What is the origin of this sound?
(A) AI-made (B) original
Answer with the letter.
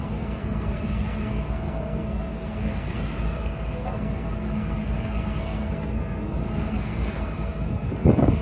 A